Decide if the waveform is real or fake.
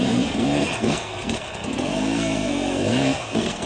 fake